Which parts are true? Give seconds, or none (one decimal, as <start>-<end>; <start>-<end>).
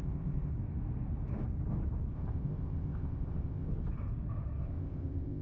0.5-2.1; 3.7-4.6